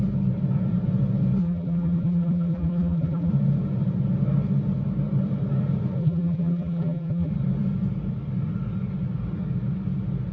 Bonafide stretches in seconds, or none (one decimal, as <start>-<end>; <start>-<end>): 0.0-1.4; 3.3-6.0; 7.3-10.3